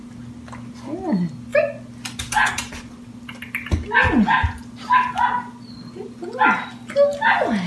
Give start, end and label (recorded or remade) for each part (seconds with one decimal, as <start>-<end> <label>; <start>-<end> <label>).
0.0-7.7 recorded